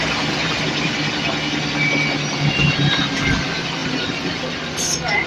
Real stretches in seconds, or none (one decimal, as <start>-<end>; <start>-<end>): 0.0-5.3